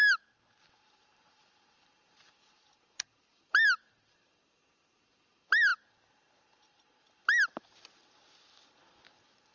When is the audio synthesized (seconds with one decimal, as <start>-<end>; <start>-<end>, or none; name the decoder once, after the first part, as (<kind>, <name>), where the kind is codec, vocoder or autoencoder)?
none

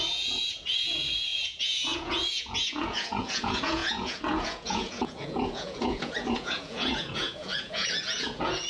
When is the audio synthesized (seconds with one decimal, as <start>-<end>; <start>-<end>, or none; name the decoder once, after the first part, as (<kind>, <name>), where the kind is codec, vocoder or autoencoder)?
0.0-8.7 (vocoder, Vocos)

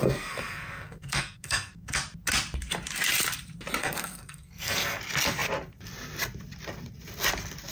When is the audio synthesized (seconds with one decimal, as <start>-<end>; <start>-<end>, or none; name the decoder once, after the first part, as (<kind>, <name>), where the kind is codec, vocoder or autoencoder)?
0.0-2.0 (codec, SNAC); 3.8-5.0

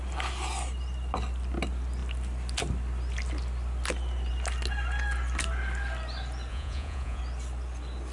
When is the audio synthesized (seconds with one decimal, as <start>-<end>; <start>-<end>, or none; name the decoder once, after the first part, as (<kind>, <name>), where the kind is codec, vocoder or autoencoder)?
6.5-7.2 (vocoder, Vocos)

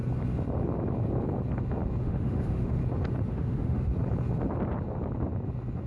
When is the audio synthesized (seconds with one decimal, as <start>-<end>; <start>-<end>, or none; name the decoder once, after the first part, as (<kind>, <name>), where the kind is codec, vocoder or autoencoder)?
2.0-2.8 (autoencoder, DAC-VAE); 3.3-3.9

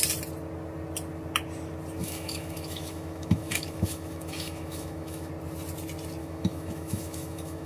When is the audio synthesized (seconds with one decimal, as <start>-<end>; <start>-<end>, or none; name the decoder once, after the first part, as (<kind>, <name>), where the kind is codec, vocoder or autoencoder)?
2.0-5.3 (autoencoder, DAC-VAE); 6.2-7.7